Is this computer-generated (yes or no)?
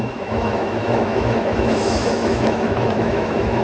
yes